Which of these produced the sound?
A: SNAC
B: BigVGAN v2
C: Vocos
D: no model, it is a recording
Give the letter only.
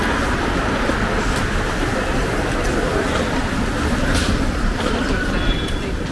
D